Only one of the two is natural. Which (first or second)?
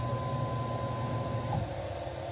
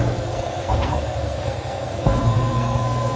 first